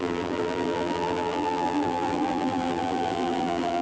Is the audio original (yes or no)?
no